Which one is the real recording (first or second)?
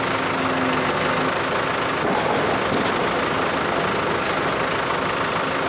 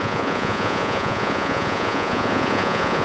first